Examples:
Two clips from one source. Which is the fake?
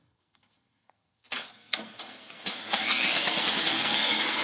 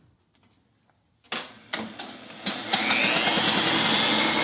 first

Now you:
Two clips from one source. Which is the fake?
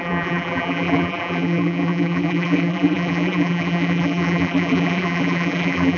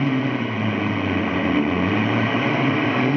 first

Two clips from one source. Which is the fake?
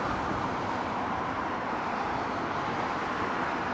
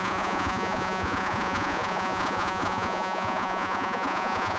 second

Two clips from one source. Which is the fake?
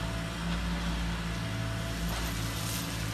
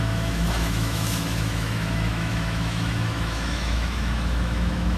second